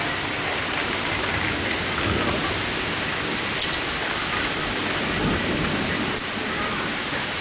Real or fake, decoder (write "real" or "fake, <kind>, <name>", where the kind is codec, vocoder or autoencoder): real